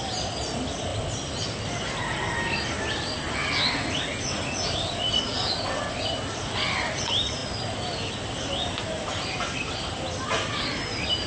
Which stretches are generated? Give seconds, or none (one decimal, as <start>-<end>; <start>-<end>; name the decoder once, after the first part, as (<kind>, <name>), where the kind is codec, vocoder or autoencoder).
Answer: none